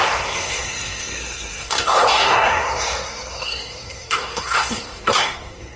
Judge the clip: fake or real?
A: fake